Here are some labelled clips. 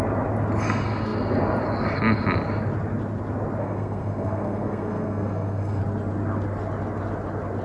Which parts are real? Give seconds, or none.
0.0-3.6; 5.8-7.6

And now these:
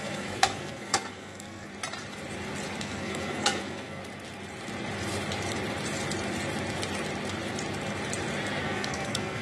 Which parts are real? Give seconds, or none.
1.7-2.8; 4.0-8.6

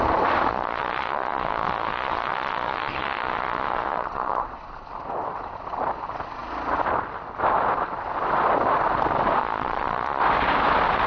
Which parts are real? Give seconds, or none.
0.0-0.5; 4.8-9.4; 10.2-11.1

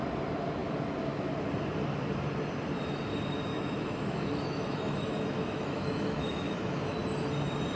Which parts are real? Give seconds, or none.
0.0-3.5; 6.8-7.8

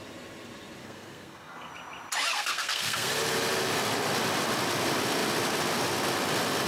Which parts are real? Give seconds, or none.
0.0-0.8; 1.7-2.3; 3.1-6.7